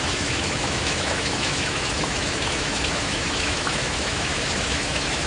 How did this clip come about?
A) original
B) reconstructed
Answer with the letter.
B